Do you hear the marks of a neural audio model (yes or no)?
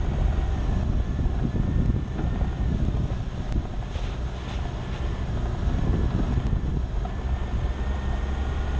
no